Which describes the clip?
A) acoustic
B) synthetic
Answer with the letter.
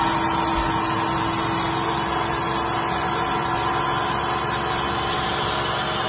A